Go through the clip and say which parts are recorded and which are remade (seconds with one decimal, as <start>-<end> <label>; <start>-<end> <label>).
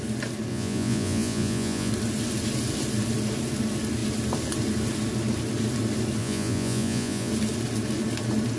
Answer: 0.0-0.5 recorded; 0.5-1.9 remade; 1.9-6.2 recorded; 6.2-7.3 remade; 7.3-8.6 recorded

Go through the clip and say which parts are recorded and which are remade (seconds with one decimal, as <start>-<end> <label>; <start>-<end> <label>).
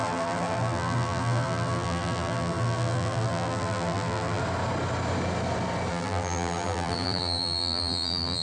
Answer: 0.0-4.4 remade; 4.4-5.9 recorded; 5.9-8.4 remade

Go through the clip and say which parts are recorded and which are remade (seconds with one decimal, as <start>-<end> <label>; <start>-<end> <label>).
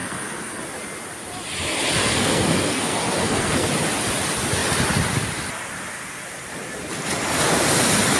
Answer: 0.0-0.6 remade; 0.6-2.0 recorded; 2.0-3.7 remade; 3.7-8.2 recorded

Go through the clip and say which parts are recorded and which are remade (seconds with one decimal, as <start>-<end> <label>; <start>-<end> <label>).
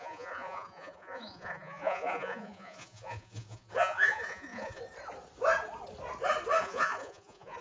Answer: 0.0-4.8 remade; 4.8-6.6 recorded; 6.6-7.6 remade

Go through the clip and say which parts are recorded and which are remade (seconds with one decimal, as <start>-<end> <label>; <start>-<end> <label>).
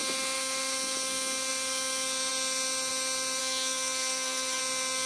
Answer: 0.0-3.4 recorded; 3.4-4.6 remade; 4.6-5.1 recorded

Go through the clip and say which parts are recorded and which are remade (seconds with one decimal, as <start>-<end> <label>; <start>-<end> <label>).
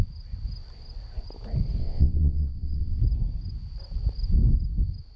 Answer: 0.0-1.8 recorded; 1.8-3.0 remade; 3.0-5.2 recorded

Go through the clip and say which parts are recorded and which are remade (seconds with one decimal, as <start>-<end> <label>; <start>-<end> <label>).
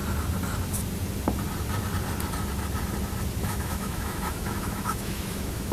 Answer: 0.0-3.4 recorded; 3.4-5.7 remade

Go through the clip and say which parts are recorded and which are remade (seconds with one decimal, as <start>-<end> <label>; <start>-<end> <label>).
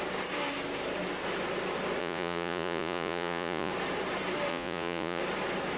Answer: 0.0-2.0 recorded; 2.0-3.7 remade; 3.7-4.5 recorded; 4.5-5.2 remade; 5.2-5.8 recorded